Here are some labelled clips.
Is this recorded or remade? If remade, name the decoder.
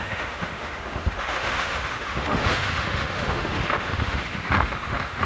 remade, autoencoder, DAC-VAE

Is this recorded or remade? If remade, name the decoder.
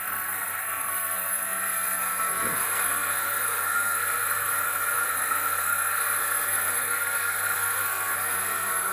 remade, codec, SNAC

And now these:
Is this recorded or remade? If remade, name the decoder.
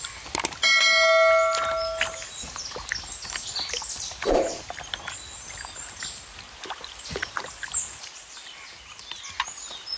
recorded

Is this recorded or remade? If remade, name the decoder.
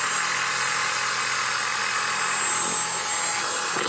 recorded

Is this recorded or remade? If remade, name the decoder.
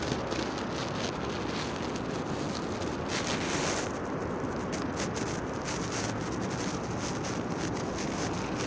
recorded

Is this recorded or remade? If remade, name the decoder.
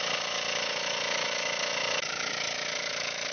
remade, autoencoder, DAC-VAE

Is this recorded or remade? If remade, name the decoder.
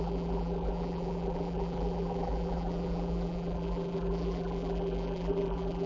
remade, vocoder, BigVGAN v2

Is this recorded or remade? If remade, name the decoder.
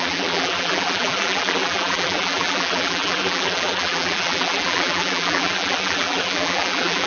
remade, vocoder, BigVGAN v2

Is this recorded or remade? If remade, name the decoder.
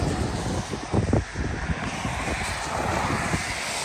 recorded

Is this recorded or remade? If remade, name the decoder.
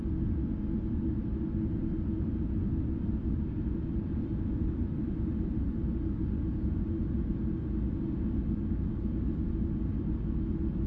recorded